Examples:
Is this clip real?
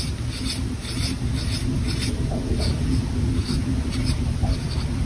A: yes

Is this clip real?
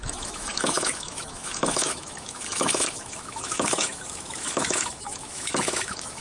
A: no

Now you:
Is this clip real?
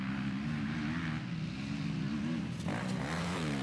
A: yes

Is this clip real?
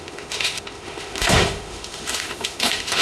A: no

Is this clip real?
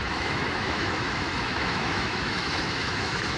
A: no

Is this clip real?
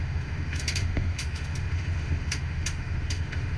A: no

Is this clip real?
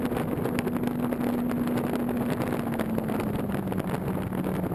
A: yes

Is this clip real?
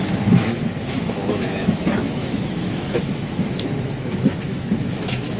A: no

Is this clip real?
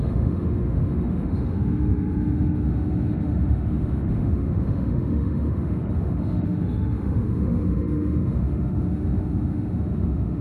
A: no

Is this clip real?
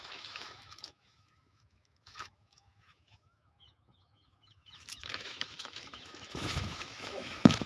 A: no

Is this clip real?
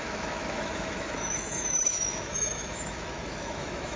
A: no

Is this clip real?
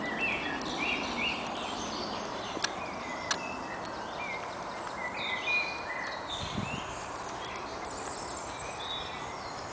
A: yes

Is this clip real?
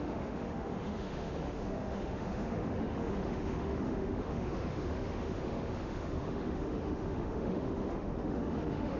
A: no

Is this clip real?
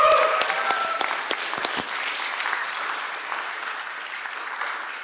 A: yes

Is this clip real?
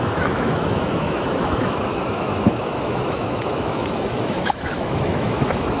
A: no